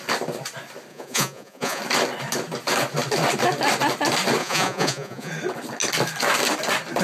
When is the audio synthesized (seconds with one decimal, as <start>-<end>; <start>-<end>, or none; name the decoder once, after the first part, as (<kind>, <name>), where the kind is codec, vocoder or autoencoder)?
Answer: 0.9-1.8 (vocoder, Vocos); 4.4-5.3

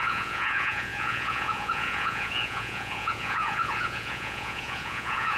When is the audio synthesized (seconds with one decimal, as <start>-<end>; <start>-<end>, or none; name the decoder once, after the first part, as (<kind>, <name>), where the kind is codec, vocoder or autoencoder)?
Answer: 0.0-5.4 (vocoder, Vocos)

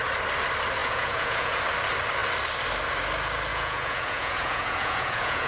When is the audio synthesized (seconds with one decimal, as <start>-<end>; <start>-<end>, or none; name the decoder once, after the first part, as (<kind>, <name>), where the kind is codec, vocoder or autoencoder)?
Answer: 0.8-1.6 (vocoder, Vocos); 3.5-5.5

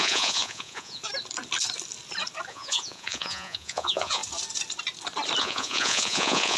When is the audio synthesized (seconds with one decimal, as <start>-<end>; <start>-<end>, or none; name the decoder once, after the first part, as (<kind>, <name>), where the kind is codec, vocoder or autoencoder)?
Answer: 0.0-1.0 (vocoder, Vocos); 2.5-4.2; 5.4-6.6